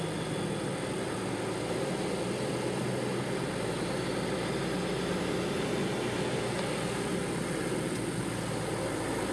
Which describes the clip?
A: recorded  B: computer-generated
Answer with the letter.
A